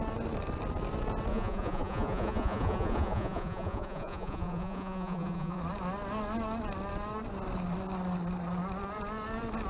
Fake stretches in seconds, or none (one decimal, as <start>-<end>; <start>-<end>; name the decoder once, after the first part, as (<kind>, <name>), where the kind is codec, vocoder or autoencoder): 1.3-5.6 (vocoder, Vocos)